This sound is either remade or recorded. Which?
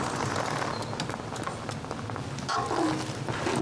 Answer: recorded